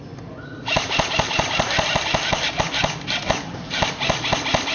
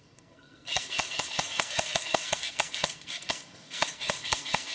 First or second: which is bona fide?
first